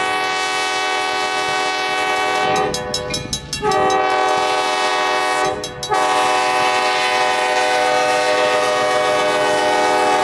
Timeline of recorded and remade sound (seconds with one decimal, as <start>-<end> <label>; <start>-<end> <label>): 0.0-10.2 recorded